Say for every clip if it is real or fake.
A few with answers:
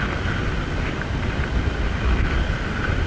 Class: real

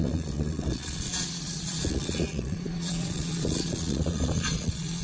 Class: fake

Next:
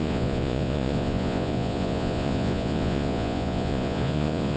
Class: fake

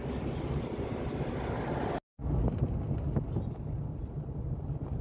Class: real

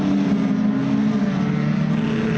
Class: real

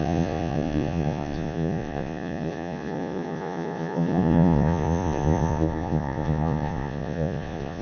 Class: fake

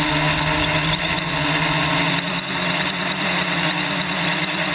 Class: real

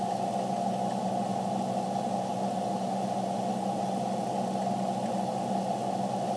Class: real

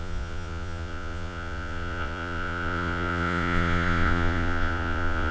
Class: fake